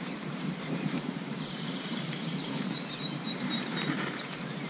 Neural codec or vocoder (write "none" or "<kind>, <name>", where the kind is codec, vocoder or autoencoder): vocoder, BigVGAN v2